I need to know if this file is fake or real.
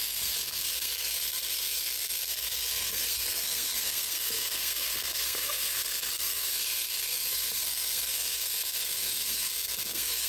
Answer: fake